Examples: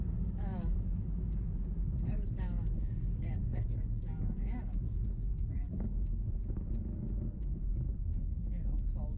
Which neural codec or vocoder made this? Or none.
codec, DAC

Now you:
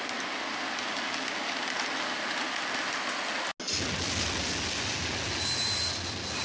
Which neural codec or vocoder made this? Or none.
none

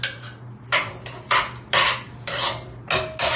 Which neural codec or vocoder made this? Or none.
none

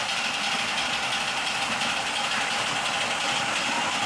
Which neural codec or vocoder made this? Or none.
none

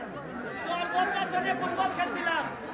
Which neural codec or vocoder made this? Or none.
none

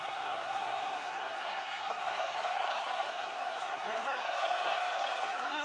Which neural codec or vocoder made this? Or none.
codec, SNAC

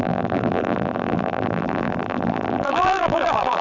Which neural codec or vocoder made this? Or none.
vocoder, BigVGAN v2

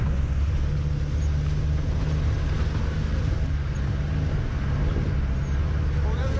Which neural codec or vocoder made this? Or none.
none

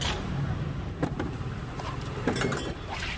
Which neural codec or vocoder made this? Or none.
vocoder, BigVGAN v2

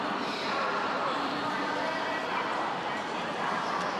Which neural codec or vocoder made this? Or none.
none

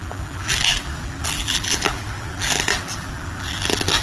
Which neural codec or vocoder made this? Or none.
vocoder, BigVGAN v2